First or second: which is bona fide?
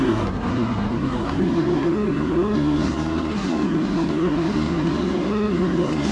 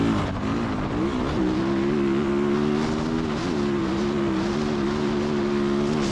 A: second